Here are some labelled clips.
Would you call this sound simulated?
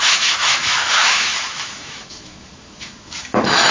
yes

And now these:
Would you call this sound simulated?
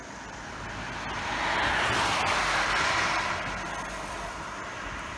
no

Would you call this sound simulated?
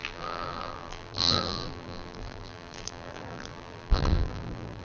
yes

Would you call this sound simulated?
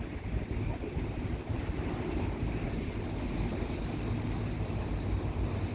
no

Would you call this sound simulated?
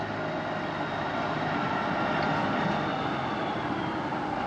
no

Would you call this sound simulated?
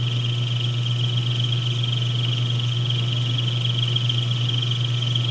no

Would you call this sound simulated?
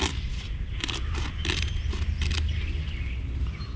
no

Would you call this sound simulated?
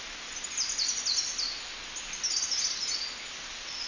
no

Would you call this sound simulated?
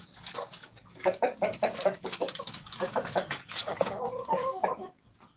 yes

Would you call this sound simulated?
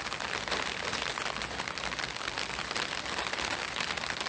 no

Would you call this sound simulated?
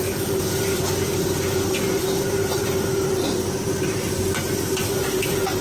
no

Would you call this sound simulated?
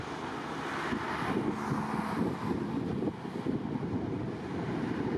no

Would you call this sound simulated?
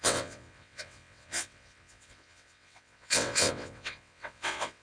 yes